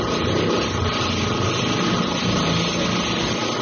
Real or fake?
real